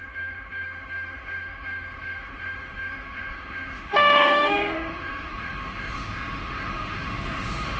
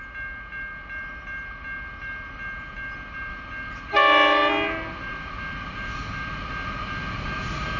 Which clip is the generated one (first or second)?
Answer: first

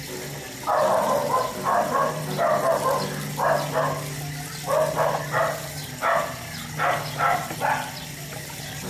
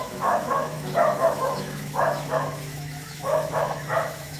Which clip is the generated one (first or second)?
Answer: second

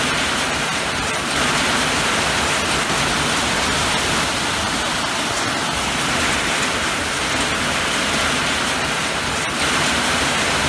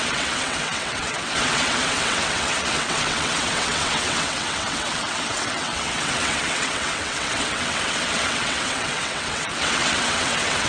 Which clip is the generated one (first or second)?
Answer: second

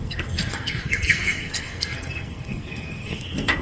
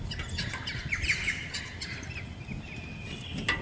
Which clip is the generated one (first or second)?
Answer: first